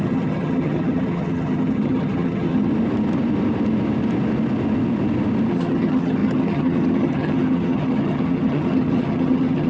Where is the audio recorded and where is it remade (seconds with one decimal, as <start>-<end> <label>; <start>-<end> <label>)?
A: 0.0-2.7 remade; 2.7-5.5 recorded; 5.5-9.7 remade